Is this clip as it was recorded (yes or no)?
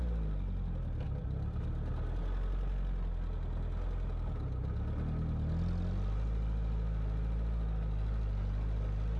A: yes